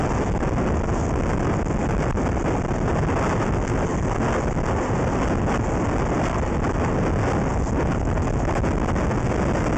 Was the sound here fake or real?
real